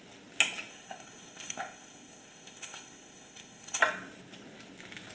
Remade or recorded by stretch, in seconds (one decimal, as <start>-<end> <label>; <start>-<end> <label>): 0.0-0.7 recorded; 0.7-3.8 remade; 3.8-5.1 recorded